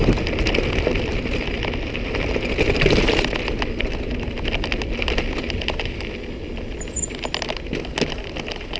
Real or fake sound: real